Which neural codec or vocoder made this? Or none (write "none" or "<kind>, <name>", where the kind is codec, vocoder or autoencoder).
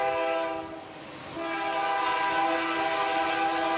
none